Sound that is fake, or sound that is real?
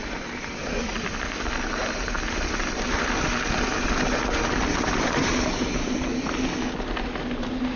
real